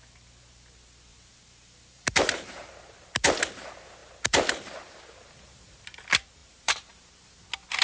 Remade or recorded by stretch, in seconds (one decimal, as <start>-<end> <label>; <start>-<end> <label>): 0.0-1.1 recorded; 1.1-2.7 remade; 2.7-6.4 recorded; 6.4-7.1 remade; 7.1-7.8 recorded